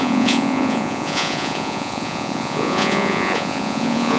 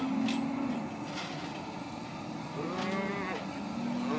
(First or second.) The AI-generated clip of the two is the first